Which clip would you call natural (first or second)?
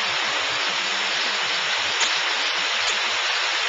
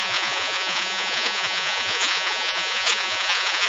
first